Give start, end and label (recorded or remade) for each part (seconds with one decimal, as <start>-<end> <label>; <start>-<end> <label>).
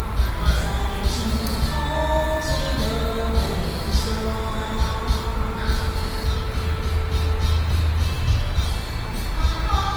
0.0-10.0 recorded